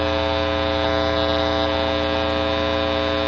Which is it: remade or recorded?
recorded